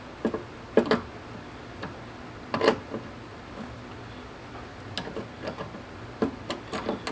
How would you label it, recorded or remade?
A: recorded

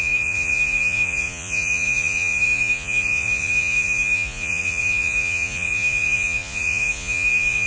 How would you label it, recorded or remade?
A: remade